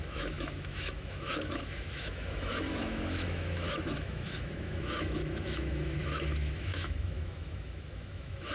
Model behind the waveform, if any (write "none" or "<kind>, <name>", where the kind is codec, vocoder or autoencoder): autoencoder, DAC-VAE